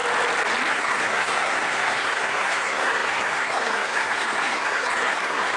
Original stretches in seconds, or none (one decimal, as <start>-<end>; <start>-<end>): 0.0-0.7